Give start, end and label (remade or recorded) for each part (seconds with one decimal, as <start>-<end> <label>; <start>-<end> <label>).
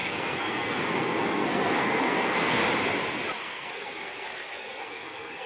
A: 0.0-2.6 remade; 2.6-3.4 recorded; 3.4-5.5 remade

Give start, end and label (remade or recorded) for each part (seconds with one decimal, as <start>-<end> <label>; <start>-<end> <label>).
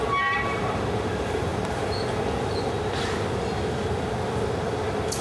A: 0.0-1.5 remade; 1.5-4.6 recorded; 4.6-5.2 remade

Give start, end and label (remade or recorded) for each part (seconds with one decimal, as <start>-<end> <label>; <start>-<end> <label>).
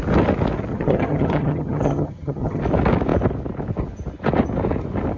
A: 0.0-0.7 recorded; 0.7-2.6 remade; 2.6-5.2 recorded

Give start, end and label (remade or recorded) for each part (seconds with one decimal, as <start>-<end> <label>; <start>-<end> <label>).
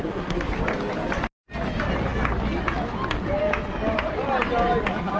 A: 0.0-0.5 remade; 0.5-5.2 recorded